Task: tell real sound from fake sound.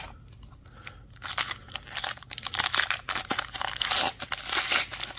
real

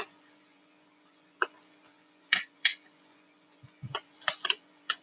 fake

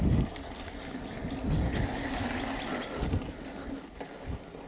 real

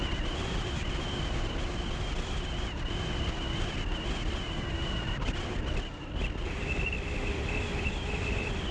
real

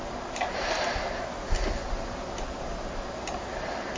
fake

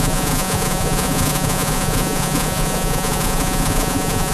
fake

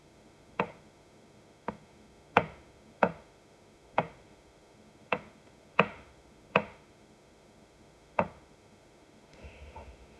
fake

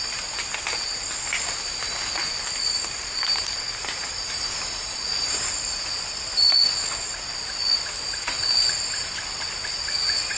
real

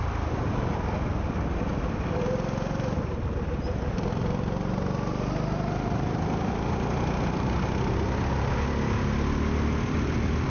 real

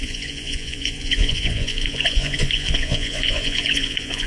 fake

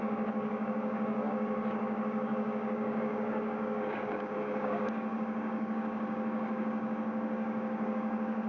fake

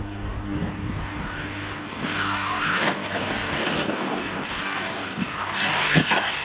fake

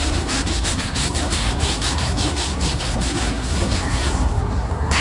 fake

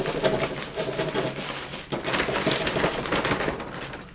real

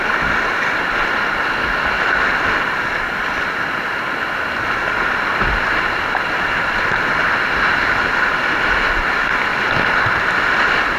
real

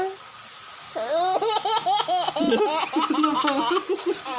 real